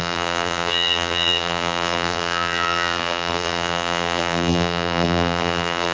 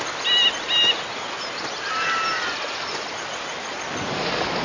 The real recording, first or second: second